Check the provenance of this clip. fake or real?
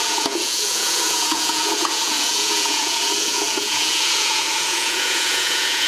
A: fake